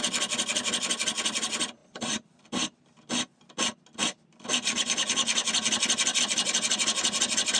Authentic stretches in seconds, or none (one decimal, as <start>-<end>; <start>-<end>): 0.0-7.6